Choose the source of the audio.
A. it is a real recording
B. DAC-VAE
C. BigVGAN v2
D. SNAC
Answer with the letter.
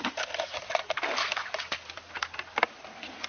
A